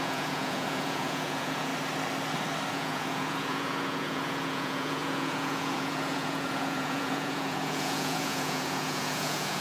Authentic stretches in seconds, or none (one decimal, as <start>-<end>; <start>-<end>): 1.7-2.7